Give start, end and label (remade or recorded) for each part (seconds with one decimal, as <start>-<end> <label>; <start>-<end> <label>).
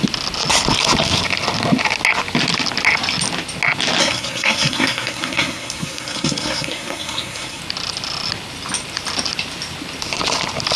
0.0-4.0 recorded; 4.0-7.6 remade; 7.6-10.8 recorded